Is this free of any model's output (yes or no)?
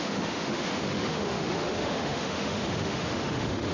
no